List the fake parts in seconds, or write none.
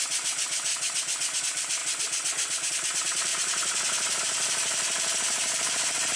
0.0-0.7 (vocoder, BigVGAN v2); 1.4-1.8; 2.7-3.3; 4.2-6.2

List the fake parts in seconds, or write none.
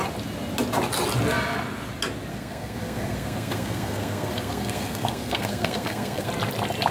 2.3-6.3 (codec, SNAC)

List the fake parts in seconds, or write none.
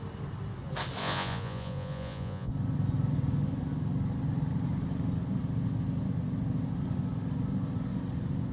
1.0-2.5 (vocoder, Vocos)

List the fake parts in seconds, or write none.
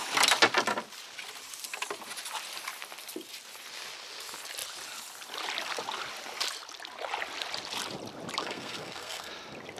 8.4-9.3 (codec, SNAC)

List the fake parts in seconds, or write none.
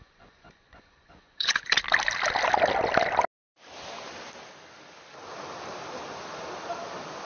0.0-1.8 (vocoder, Vocos)